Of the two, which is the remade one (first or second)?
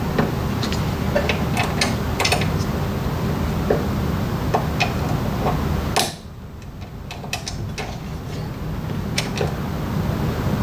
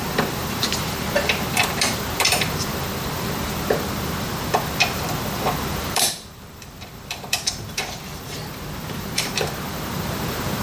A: second